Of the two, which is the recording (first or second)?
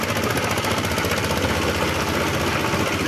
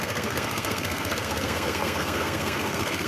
first